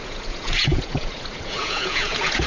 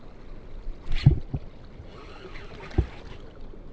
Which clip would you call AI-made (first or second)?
first